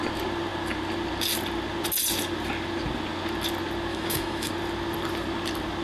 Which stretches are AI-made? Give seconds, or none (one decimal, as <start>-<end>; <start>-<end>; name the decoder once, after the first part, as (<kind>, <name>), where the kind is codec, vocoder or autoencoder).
3.9-4.5 (autoencoder, DAC-VAE)